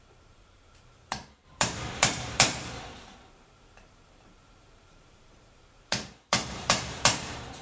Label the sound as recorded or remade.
remade